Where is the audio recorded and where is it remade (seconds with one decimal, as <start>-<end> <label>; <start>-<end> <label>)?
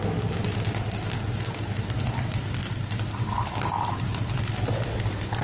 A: 0.0-5.4 recorded